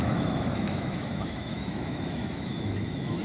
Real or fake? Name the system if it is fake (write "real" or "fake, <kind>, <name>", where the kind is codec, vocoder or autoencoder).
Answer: fake, autoencoder, DAC-VAE